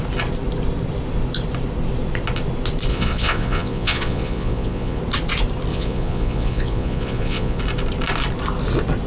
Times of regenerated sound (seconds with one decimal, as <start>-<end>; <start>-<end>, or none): 2.9-5.0; 5.7-7.6